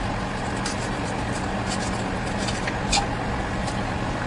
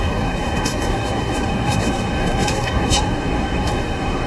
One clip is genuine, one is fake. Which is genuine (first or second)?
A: first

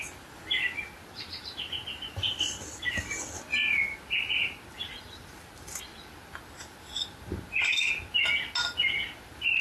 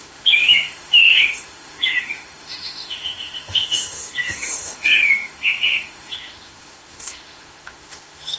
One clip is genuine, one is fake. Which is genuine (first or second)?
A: first